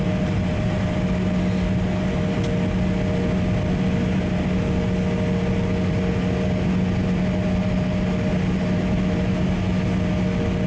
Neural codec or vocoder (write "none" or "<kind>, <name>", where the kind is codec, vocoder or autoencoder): none